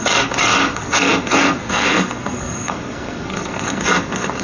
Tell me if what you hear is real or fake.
fake